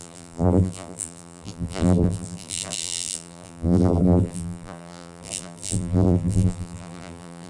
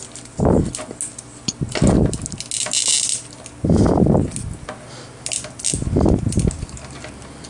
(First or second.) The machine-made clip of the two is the first